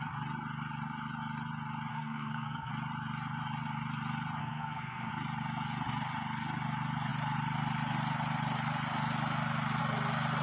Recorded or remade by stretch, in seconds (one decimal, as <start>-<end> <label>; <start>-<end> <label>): 0.0-1.9 recorded; 1.9-2.7 remade; 2.7-4.4 recorded; 4.4-5.1 remade; 5.1-10.4 recorded